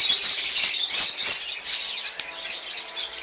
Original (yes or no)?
yes